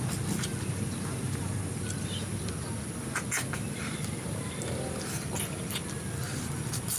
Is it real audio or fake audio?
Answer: real